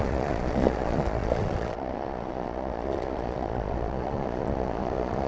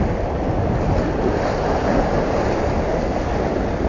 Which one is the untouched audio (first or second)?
second